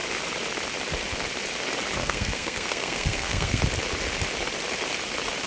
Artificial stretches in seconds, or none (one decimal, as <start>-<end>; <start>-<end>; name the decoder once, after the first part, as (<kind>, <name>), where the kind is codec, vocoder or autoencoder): 2.0-3.6 (codec, SNAC)